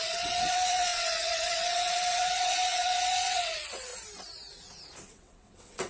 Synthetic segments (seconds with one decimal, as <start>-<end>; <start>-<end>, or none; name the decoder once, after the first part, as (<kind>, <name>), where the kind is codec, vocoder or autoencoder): 0.0-3.9 (vocoder, WaveNeXt); 5.1-5.9